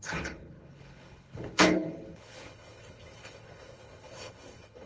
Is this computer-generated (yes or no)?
yes